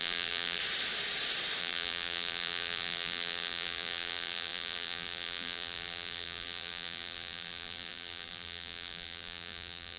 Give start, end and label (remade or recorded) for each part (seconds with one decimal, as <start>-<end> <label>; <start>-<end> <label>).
0.0-0.6 remade; 0.6-1.6 recorded; 1.6-10.0 remade